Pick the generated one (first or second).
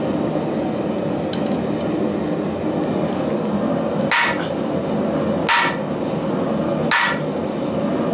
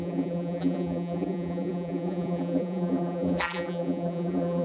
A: second